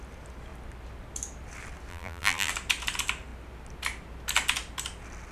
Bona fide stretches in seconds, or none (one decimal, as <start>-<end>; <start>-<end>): 0.0-1.9; 2.5-5.3